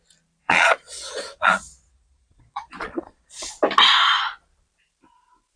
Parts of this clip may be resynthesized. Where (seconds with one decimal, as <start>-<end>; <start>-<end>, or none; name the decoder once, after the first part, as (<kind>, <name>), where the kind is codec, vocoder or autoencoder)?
0.4-3.5 (vocoder, Vocos)